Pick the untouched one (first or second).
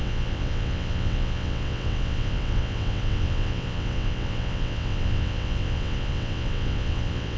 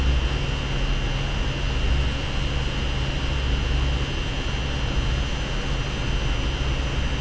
second